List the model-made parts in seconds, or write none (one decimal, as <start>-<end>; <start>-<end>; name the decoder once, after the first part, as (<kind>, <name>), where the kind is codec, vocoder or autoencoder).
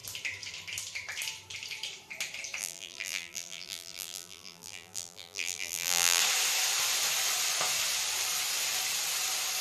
2.6-6.2 (vocoder, BigVGAN v2)